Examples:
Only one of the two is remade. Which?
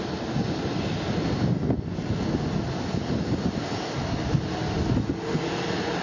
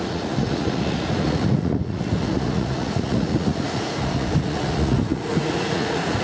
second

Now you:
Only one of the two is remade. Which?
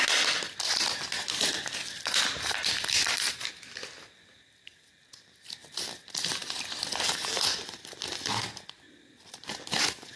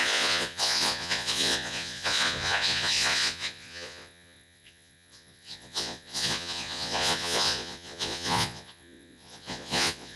second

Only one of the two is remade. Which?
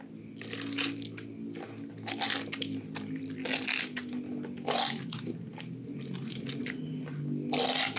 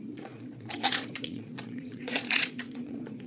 second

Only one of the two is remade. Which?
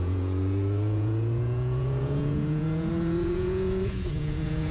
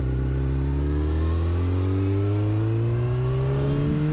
first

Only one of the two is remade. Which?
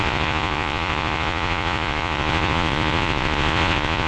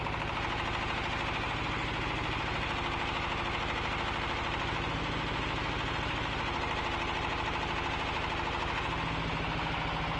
first